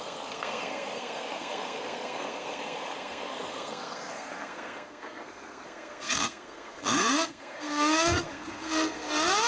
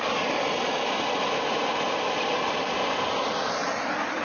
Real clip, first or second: second